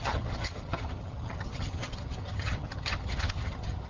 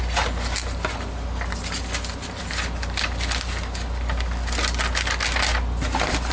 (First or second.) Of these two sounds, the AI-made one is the first